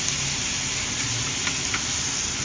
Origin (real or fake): real